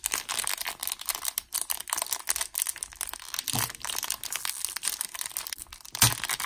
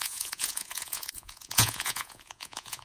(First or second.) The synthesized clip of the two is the second